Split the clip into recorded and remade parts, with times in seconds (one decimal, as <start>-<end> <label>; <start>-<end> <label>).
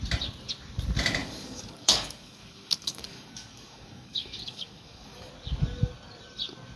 0.0-1.2 recorded; 1.2-5.3 remade; 5.3-6.8 recorded